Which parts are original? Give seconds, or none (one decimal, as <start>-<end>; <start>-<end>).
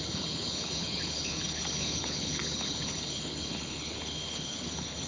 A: none